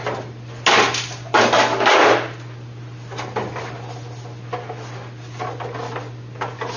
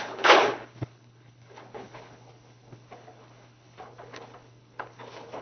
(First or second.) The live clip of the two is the first